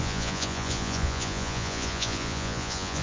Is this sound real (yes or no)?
no